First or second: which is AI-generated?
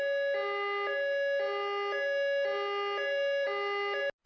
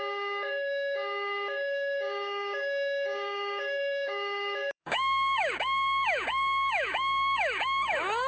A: second